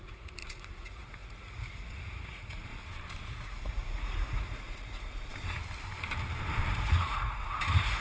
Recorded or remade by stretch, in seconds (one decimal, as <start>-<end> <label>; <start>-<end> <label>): 0.0-2.7 remade; 2.7-3.3 recorded; 3.3-5.3 remade; 5.3-6.7 recorded; 6.7-8.0 remade